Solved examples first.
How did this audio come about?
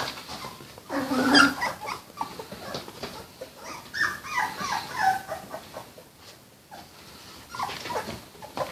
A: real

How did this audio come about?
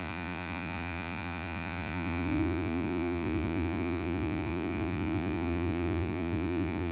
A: fake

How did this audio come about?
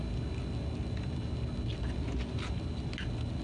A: real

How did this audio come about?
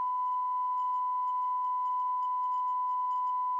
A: real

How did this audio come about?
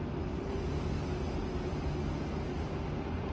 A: real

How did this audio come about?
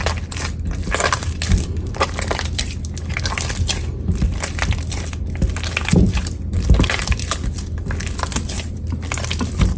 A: real